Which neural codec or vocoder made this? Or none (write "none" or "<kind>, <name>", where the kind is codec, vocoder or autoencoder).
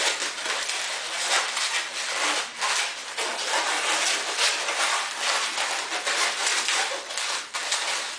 none